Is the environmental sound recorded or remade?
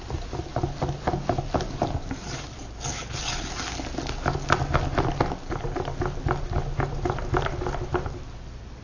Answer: recorded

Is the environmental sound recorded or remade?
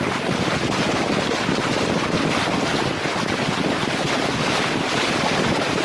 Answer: recorded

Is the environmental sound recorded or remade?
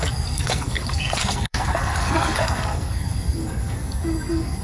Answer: remade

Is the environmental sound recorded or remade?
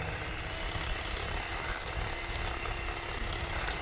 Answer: recorded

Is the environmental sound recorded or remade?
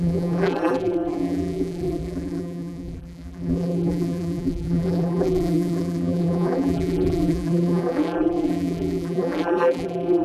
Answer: remade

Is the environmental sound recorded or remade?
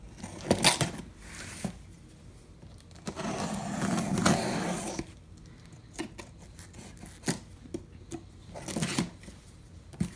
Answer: recorded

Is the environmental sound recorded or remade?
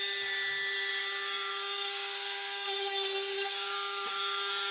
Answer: remade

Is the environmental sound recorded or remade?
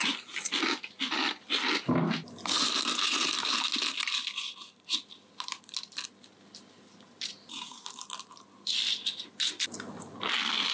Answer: recorded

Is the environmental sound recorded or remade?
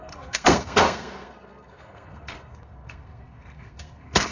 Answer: remade